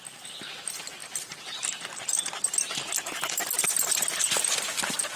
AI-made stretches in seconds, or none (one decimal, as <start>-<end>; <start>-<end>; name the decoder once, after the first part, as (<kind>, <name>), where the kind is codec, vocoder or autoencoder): none